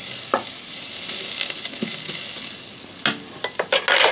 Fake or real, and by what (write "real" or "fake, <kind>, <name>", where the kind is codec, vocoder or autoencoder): real